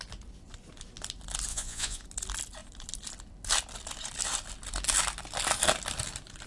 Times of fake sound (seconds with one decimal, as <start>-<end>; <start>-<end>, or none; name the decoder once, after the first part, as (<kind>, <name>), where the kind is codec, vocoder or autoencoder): 1.5-2.0 (vocoder, Vocos)